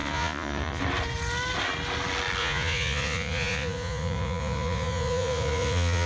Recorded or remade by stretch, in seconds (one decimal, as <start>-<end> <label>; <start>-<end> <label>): 0.0-0.8 remade; 0.8-2.4 recorded; 2.4-6.1 remade